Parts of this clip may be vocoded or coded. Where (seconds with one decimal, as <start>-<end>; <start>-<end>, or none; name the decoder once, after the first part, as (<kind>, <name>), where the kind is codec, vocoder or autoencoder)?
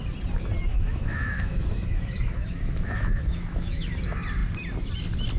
0.7-3.9 (autoencoder, DAC-VAE)